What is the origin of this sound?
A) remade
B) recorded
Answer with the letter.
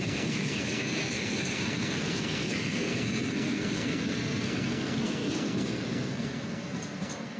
A